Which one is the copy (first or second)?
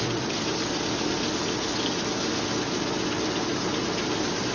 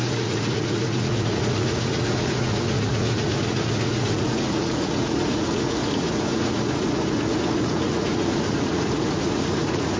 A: second